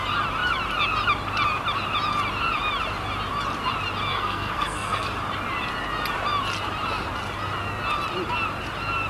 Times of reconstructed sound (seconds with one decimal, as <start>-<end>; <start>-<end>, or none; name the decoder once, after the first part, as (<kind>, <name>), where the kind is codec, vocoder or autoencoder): 4.1-5.1 (codec, SNAC)